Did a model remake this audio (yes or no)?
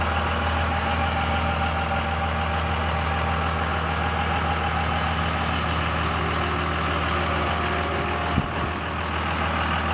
no